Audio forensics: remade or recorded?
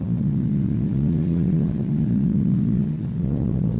remade